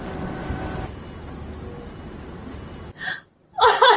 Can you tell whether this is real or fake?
real